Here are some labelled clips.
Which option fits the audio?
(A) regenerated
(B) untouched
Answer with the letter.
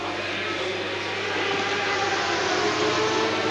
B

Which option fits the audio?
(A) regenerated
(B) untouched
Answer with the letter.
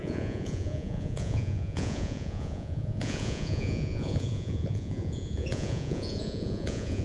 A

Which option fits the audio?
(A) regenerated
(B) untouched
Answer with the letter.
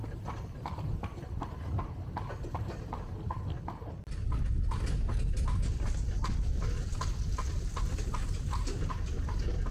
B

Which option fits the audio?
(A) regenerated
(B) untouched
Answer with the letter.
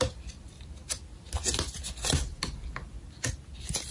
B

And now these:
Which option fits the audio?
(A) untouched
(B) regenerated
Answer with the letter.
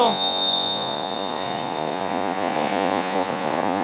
B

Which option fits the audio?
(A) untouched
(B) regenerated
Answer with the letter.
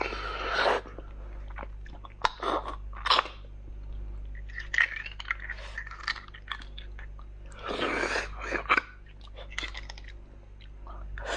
A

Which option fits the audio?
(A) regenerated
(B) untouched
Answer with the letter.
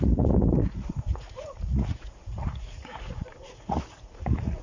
A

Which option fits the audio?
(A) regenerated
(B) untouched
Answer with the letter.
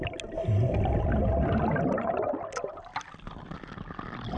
B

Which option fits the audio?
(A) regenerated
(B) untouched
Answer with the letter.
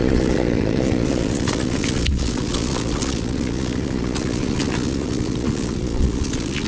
A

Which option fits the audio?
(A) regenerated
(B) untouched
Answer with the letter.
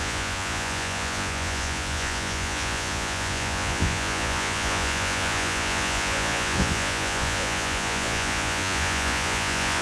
A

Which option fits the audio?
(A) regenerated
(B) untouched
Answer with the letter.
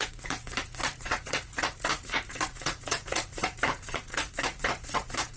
A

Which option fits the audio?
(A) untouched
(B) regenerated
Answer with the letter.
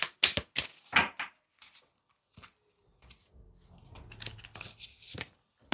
A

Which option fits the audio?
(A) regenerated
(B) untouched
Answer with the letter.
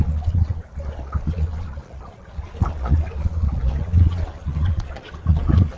A